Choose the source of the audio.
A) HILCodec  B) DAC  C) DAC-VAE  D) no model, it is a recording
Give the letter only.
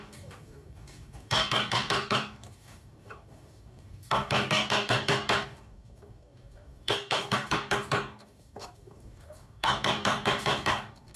B